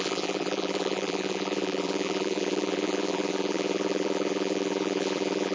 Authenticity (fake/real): fake